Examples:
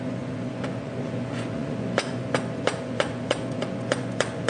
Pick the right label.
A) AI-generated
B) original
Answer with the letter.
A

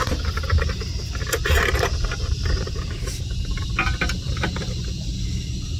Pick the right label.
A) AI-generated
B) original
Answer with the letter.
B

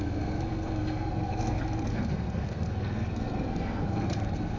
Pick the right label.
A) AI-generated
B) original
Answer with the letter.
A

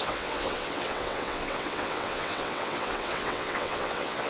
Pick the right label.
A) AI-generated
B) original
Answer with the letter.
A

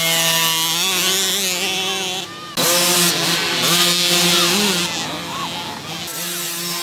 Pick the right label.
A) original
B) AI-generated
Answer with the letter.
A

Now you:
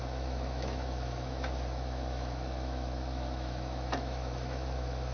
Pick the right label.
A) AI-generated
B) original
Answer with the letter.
A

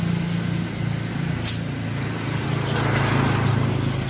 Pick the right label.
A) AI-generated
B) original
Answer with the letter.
B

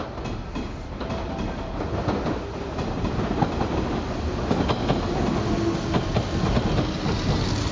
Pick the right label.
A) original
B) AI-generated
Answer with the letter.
A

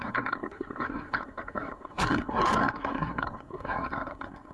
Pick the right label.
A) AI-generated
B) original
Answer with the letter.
A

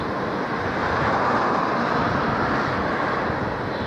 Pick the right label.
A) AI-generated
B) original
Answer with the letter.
B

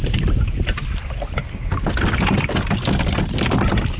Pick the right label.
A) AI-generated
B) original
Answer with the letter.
B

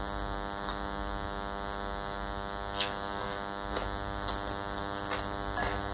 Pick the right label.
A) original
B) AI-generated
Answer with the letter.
A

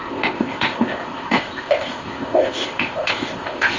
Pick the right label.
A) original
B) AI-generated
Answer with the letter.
B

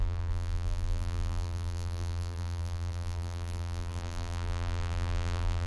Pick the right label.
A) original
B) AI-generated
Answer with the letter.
B